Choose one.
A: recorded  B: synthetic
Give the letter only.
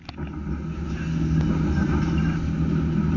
A